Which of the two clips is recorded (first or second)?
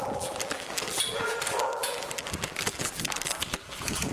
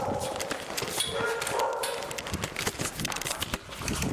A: second